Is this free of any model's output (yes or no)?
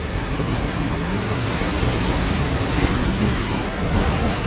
no